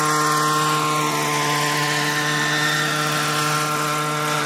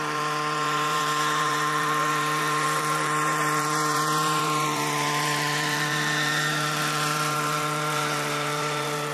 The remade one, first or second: second